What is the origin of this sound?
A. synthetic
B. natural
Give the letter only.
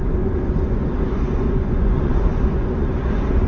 A